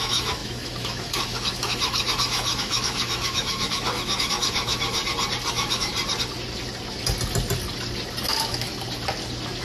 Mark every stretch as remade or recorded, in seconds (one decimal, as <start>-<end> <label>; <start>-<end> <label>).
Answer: 0.0-5.0 remade; 5.0-5.5 recorded; 5.5-5.9 remade; 5.9-8.2 recorded; 8.2-8.7 remade; 8.7-9.6 recorded